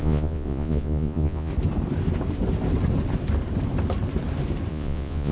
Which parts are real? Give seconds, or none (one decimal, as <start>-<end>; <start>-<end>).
1.5-4.7